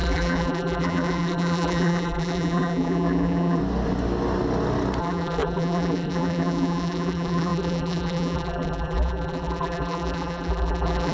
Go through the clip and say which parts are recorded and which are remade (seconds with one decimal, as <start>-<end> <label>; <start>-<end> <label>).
0.0-3.6 remade; 3.6-5.0 recorded; 5.0-11.1 remade